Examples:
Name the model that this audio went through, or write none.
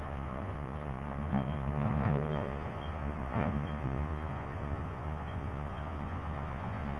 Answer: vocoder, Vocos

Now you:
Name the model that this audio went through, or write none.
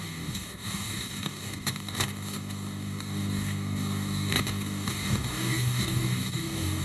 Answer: codec, DAC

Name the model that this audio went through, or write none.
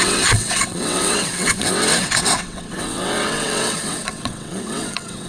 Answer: vocoder, WaveNeXt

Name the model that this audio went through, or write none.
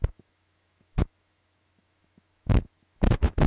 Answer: autoencoder, DAC-VAE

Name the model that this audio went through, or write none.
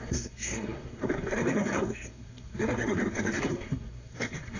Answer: codec, SNAC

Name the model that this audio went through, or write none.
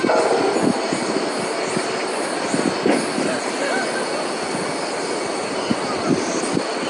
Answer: none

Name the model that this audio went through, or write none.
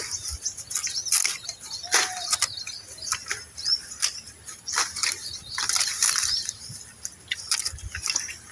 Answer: none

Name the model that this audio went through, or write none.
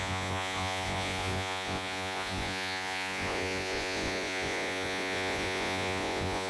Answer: vocoder, Vocos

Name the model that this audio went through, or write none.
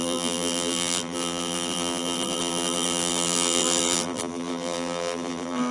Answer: vocoder, BigVGAN v2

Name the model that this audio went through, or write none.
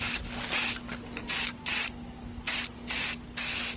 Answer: none